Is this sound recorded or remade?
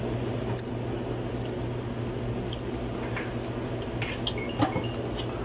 recorded